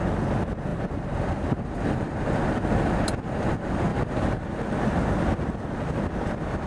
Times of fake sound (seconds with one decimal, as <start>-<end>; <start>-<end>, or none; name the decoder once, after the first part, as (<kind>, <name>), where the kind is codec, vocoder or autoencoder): 0.7-2.3 (vocoder, BigVGAN v2); 3.9-4.6